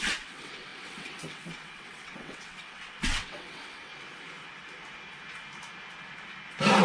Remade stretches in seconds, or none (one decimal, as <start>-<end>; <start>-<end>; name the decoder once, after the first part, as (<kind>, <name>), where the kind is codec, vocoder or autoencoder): 0.0-3.9 (vocoder, WaveNeXt)